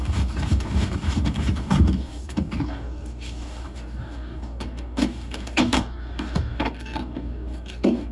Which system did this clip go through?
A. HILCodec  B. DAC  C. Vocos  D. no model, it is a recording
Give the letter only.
B